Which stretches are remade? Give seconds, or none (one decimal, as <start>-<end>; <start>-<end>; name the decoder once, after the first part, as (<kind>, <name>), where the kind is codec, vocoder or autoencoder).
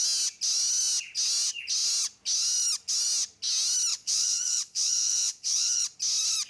3.9-5.8 (vocoder, Vocos)